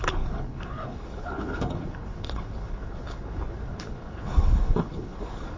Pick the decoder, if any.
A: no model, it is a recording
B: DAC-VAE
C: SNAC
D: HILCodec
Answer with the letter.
D